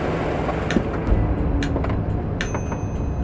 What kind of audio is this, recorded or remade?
recorded